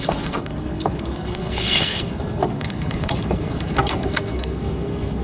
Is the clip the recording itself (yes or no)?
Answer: no